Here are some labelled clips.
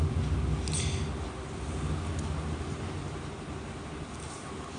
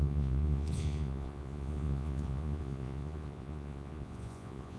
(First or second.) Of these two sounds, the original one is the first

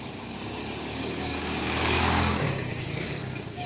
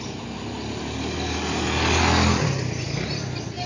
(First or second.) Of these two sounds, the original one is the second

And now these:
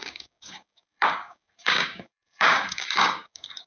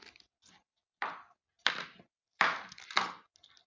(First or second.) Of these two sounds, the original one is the second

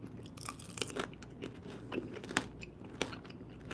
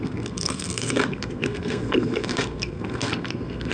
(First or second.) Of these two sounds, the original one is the first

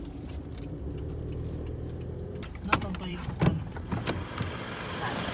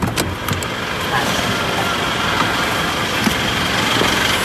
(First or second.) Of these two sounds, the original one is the second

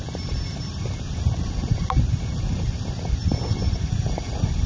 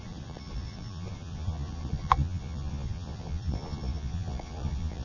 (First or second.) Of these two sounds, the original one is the first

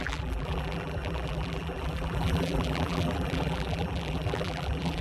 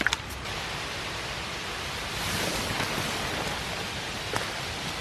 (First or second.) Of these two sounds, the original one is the second